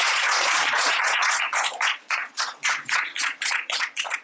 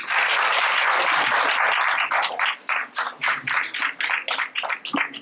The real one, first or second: second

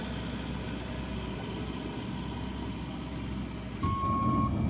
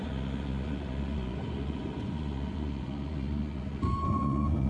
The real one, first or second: first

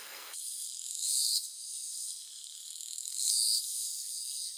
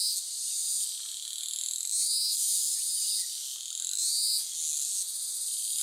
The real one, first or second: second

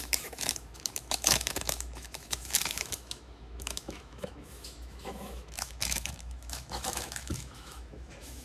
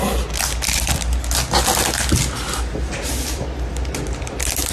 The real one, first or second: second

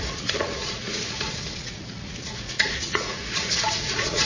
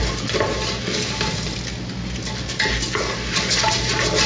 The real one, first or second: second